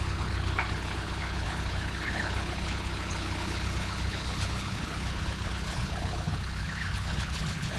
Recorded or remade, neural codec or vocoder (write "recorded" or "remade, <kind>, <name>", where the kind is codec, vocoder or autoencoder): remade, codec, HILCodec